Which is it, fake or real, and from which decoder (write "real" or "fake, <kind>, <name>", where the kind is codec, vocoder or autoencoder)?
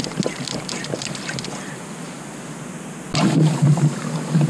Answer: real